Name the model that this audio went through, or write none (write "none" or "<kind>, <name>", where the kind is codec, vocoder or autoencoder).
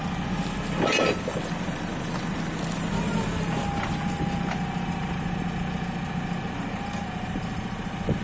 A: none